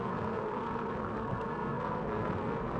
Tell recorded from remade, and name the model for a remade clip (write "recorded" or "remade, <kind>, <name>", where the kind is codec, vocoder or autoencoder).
remade, codec, SNAC